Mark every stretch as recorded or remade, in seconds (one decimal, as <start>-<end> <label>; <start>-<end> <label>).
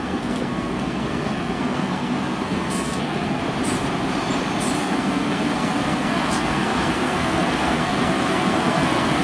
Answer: 0.0-3.4 remade; 3.4-4.8 recorded; 4.8-9.2 remade